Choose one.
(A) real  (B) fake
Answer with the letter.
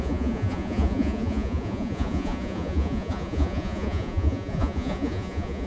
B